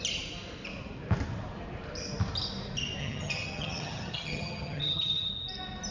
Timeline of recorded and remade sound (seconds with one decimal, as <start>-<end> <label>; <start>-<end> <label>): 0.0-3.0 recorded; 3.0-5.3 remade; 5.3-5.9 recorded